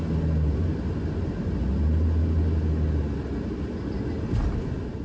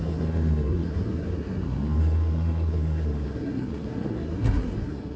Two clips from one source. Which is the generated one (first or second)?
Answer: second